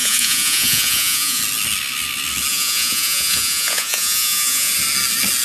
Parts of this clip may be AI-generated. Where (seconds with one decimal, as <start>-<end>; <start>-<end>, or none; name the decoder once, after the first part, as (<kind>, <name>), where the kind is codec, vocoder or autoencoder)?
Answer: 0.0-1.4 (vocoder, Vocos); 2.5-4.7